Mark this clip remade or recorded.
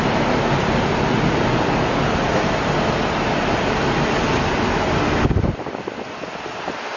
recorded